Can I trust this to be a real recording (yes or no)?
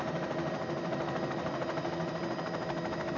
yes